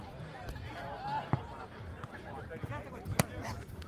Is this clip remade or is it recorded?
recorded